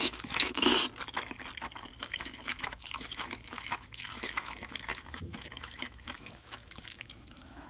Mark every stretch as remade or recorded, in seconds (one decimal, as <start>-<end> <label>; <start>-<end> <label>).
0.0-0.7 remade; 0.7-2.0 recorded; 2.0-7.7 remade